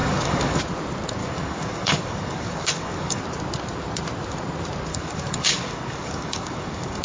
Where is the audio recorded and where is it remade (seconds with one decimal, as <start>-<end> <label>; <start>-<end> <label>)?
0.0-0.6 remade; 0.6-1.2 recorded; 1.2-3.2 remade; 3.2-4.9 recorded; 4.9-7.0 remade